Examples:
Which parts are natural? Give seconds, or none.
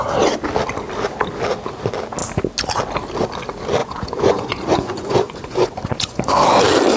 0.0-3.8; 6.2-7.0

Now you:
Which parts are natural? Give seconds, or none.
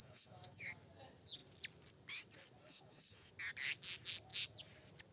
0.7-2.7; 3.3-5.1